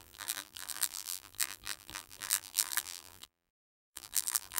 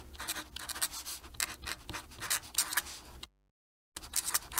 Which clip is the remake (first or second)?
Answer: first